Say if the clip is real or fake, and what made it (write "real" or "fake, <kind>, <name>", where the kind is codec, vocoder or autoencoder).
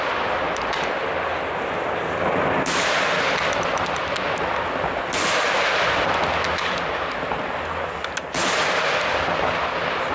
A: real